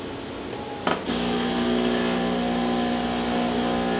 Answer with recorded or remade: recorded